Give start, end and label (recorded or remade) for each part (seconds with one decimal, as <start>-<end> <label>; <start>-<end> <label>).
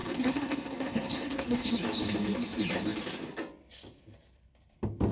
0.0-1.7 remade; 1.7-5.1 recorded